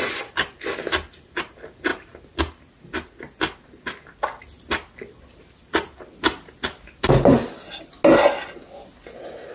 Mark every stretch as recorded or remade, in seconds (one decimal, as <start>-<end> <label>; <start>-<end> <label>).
0.0-9.5 recorded